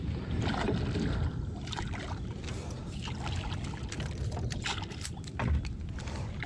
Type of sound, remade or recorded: recorded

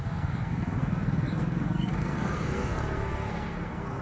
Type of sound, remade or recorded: remade